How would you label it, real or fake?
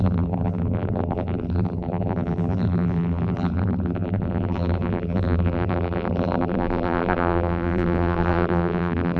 fake